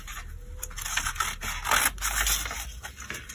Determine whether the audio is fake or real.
real